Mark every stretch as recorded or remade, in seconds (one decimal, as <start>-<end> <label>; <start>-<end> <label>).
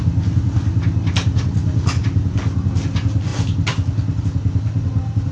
0.0-5.3 recorded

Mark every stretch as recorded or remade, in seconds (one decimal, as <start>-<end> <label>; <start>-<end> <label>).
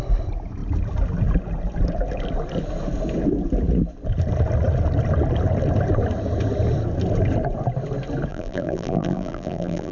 0.0-8.3 recorded; 8.3-9.9 remade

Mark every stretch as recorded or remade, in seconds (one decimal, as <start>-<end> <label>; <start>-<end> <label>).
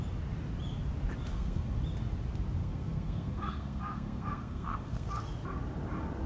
0.0-1.3 recorded; 1.3-1.8 remade; 1.8-2.6 recorded; 2.6-5.2 remade; 5.2-6.3 recorded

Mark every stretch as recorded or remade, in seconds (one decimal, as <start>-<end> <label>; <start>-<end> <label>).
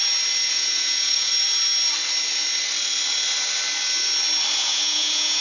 0.0-0.5 recorded; 0.5-1.3 remade; 1.3-4.5 recorded; 4.5-5.4 remade